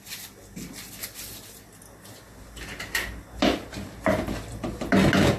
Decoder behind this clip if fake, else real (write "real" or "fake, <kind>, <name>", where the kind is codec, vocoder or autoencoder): real